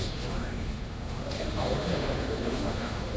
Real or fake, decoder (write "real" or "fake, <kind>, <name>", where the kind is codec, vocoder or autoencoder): fake, autoencoder, DAC-VAE